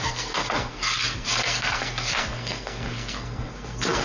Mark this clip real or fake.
fake